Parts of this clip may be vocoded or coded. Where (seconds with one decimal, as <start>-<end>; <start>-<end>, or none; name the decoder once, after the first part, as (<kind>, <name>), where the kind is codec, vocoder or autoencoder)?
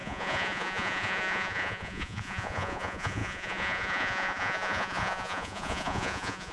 0.0-6.5 (vocoder, Vocos)